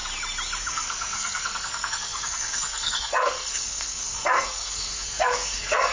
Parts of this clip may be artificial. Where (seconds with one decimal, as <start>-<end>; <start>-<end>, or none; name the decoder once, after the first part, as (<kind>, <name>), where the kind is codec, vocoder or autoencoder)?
0.7-5.9 (codec, SNAC)